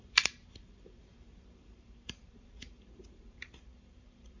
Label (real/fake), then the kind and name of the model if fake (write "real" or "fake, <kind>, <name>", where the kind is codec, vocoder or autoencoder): fake, vocoder, BigVGAN v2